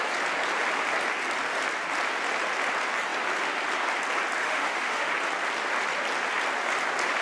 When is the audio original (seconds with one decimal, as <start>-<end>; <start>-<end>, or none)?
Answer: 0.0-4.4; 5.1-7.2